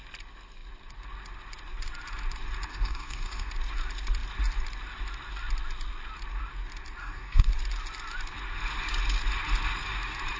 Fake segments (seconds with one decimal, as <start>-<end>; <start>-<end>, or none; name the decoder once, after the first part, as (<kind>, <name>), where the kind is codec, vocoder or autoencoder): 2.7-3.5 (codec, DAC); 7.0-7.5